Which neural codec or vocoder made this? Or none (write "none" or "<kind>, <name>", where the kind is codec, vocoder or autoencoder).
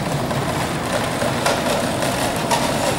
vocoder, BigVGAN v2